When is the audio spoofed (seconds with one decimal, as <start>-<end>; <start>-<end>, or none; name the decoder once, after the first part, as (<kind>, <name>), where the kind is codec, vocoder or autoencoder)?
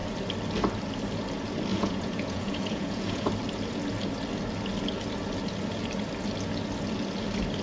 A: 1.7-3.3 (vocoder, Vocos)